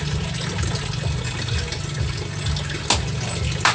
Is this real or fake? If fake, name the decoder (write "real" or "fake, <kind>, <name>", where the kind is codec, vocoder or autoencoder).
real